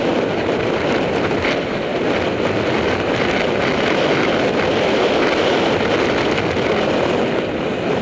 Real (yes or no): yes